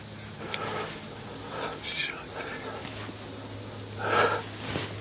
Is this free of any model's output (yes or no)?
yes